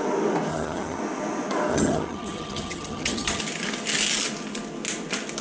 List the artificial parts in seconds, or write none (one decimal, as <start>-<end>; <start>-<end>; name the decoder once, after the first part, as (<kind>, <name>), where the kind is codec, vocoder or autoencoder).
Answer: 0.5-1.0 (vocoder, HiFi-GAN); 1.7-3.4